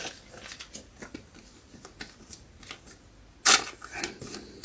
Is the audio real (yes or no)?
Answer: yes